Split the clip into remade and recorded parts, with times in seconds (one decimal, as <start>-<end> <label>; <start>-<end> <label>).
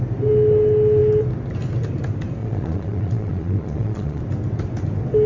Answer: 0.0-2.4 recorded; 2.4-4.2 remade; 4.2-5.3 recorded